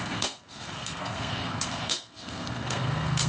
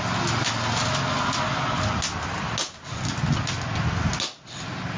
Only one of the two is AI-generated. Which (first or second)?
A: first